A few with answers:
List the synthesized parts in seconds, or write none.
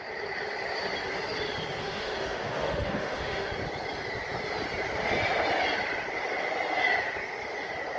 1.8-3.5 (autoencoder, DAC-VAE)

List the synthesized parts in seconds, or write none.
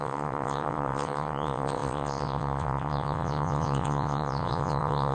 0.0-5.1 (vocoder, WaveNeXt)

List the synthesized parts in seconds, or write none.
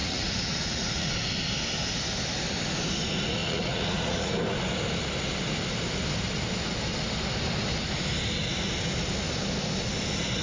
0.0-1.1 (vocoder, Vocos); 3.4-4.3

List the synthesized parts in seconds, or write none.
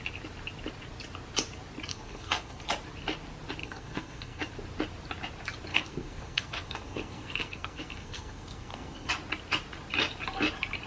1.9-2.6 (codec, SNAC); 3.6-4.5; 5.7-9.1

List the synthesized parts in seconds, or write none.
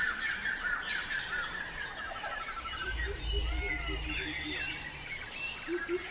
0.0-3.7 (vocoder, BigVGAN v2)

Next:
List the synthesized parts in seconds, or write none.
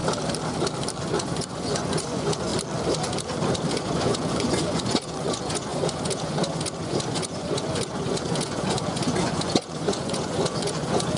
1.0-2.5 (vocoder, Vocos); 3.7-11.2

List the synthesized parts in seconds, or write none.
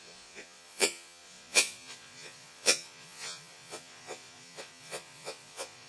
0.0-5.9 (vocoder, Vocos)